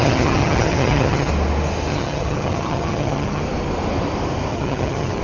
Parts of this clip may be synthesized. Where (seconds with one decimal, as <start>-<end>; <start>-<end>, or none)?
0.0-1.3; 1.9-3.4; 4.5-5.2